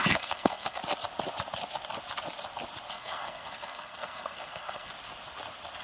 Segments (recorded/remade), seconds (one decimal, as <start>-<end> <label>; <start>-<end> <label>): 0.0-0.8 remade; 0.8-2.9 recorded; 2.9-4.9 remade; 4.9-5.8 recorded